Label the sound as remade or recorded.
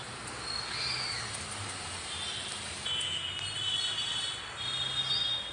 recorded